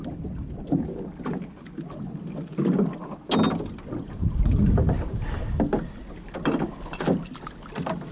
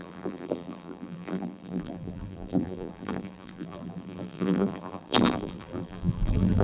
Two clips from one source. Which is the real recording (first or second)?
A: first